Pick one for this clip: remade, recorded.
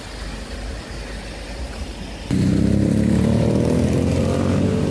recorded